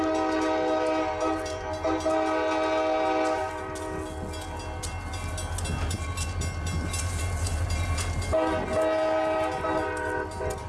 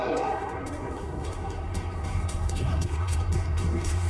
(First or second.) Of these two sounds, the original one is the first